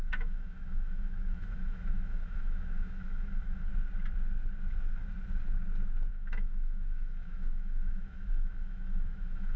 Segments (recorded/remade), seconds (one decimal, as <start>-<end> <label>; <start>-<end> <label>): 0.0-3.7 remade; 3.7-6.1 recorded; 6.1-9.6 remade